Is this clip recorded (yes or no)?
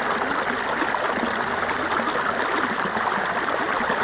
yes